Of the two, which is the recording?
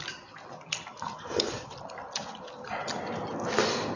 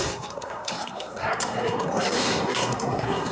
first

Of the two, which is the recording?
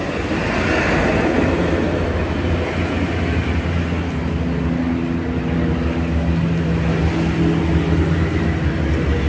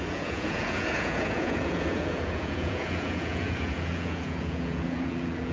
first